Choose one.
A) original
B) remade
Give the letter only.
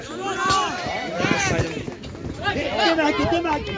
A